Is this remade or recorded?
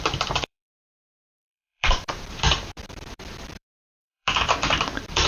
remade